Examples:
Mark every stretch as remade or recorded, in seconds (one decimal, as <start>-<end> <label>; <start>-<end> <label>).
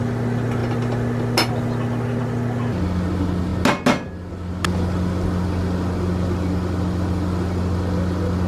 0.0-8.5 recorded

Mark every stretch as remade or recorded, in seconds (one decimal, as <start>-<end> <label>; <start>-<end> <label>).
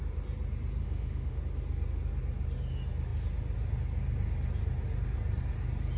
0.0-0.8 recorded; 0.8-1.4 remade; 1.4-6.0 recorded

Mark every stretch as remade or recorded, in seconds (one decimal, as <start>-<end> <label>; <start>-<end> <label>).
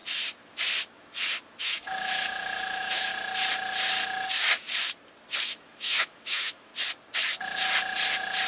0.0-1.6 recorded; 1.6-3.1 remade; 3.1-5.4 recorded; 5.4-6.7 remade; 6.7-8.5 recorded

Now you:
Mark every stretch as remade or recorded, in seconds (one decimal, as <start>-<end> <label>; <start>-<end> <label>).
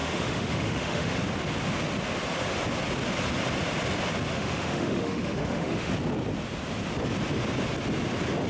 0.0-1.2 remade; 1.2-4.3 recorded; 4.3-5.9 remade; 5.9-8.5 recorded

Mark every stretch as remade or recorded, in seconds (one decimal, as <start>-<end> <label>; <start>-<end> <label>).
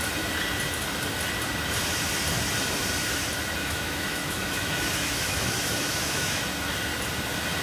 0.0-3.6 recorded; 3.6-6.4 remade; 6.4-7.6 recorded